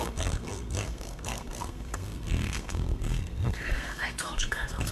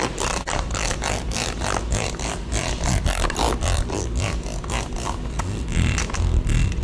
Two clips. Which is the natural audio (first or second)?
second